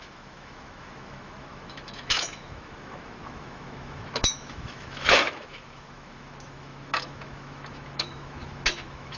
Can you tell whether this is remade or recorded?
remade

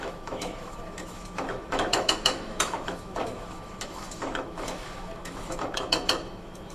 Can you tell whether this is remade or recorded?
remade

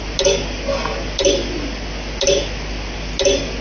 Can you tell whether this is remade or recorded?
recorded